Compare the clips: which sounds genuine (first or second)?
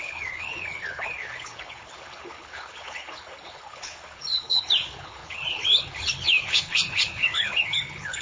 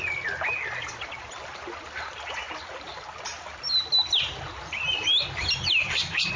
second